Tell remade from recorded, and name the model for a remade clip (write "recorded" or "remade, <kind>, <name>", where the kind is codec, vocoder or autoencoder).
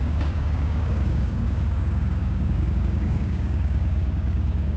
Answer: remade, codec, DAC